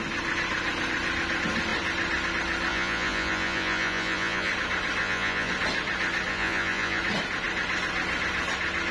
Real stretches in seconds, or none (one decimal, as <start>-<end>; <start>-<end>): 0.0-2.7; 4.5-5.0; 5.5-6.3; 7.0-8.9